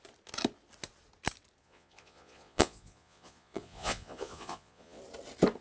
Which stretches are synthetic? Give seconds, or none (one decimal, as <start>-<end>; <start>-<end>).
1.6-5.0